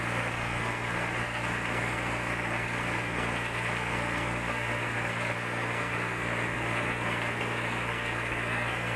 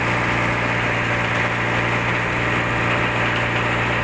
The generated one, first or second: first